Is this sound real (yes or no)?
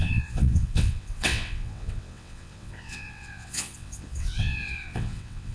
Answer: no